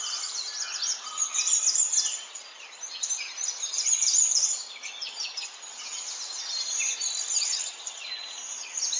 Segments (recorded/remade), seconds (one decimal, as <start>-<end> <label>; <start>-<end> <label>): 0.0-9.0 recorded